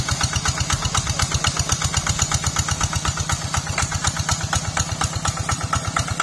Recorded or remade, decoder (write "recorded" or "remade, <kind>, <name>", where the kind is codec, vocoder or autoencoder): recorded